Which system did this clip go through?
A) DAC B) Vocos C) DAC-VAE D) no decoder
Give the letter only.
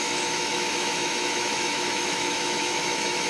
C